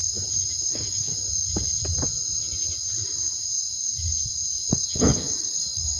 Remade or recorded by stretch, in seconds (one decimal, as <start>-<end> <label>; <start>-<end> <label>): 0.0-0.7 recorded; 0.7-1.1 remade; 1.1-4.7 recorded; 4.7-6.0 remade